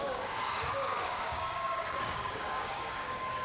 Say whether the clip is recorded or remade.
remade